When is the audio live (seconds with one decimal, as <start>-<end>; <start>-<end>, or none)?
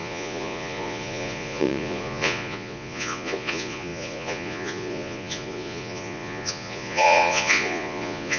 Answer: none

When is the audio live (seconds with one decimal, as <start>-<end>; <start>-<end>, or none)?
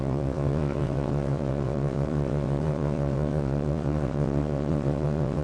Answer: none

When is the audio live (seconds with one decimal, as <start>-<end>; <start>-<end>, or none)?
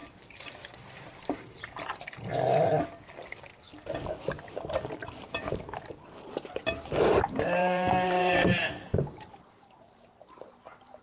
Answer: 2.2-5.0; 5.8-7.6; 9.5-11.0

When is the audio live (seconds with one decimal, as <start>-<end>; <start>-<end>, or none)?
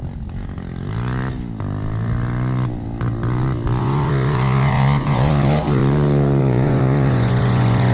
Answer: 0.0-3.8; 5.8-6.4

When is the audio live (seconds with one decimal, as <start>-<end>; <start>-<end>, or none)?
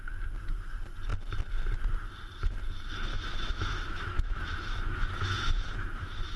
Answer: 0.0-3.1